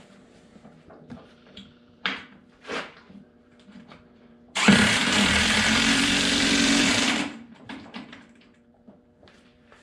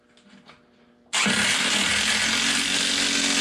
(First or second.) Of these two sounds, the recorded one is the second